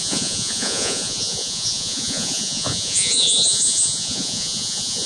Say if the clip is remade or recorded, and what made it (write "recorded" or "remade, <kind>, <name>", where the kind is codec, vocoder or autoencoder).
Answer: remade, vocoder, Vocos